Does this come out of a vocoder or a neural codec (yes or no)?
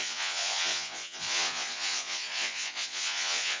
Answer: yes